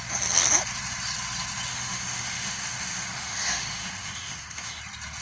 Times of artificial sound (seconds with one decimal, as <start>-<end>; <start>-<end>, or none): 1.7-4.8